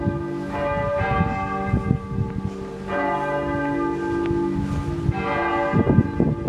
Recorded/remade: recorded